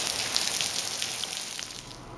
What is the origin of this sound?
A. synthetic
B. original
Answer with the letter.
B